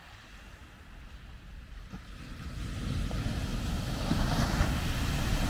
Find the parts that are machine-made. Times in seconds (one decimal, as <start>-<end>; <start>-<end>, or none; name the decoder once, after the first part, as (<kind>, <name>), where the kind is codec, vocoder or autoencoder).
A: none